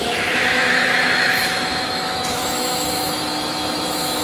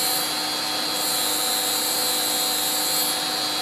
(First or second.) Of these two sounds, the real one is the second